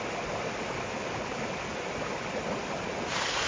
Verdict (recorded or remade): recorded